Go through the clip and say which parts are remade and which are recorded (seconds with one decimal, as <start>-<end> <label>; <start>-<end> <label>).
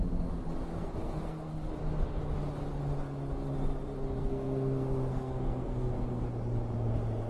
0.0-0.6 recorded; 0.6-1.7 remade; 1.7-4.2 recorded; 4.2-6.3 remade; 6.3-7.3 recorded